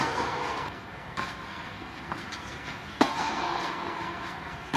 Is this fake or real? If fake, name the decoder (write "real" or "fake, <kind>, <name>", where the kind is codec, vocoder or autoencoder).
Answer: fake, codec, SNAC